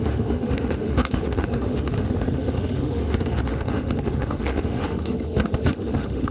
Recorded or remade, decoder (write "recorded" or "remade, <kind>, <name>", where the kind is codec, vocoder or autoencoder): remade, autoencoder, DAC-VAE